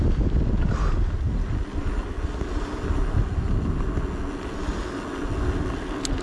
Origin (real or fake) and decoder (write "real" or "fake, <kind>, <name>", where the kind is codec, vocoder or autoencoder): real